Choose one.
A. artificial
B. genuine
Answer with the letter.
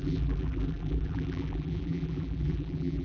A